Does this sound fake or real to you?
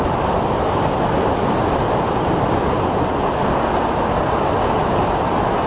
real